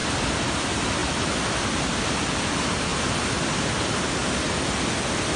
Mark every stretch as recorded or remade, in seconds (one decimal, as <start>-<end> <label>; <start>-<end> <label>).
0.0-0.5 recorded; 0.5-2.9 remade; 2.9-3.8 recorded; 3.8-4.2 remade; 4.2-5.4 recorded